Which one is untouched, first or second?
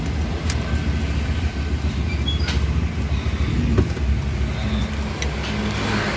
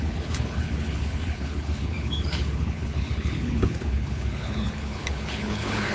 first